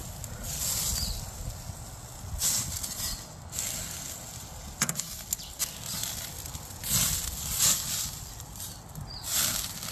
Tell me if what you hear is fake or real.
real